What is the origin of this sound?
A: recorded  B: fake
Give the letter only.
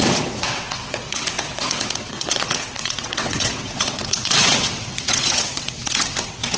B